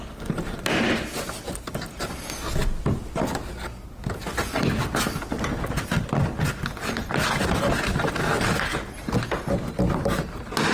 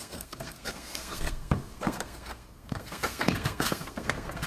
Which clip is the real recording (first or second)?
first